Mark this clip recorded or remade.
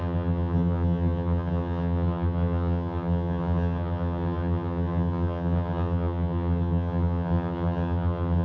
remade